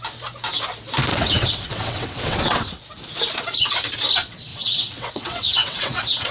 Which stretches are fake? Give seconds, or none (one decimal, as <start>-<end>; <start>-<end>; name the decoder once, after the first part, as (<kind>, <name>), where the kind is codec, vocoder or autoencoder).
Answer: 1.1-2.7 (vocoder, WaveNeXt); 4.5-6.3